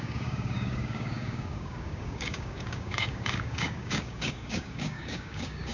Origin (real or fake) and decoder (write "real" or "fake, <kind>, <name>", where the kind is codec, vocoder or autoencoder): fake, codec, DAC